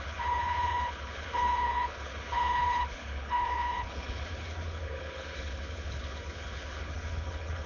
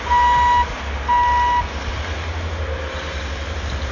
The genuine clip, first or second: second